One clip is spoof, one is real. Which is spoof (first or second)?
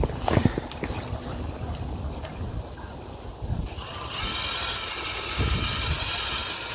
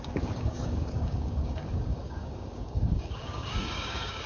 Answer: second